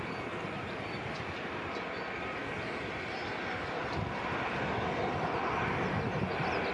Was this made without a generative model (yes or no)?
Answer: yes